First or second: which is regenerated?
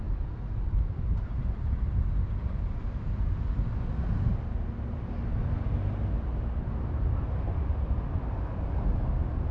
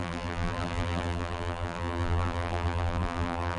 second